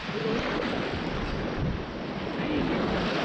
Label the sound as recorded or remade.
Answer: recorded